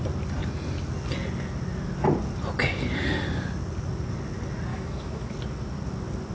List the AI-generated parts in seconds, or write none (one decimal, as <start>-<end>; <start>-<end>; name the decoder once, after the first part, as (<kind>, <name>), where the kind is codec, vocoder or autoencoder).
4.7-5.3 (autoencoder, DAC-VAE)